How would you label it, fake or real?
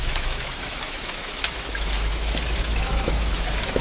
fake